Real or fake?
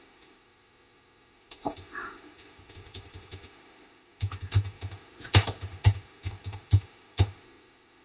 fake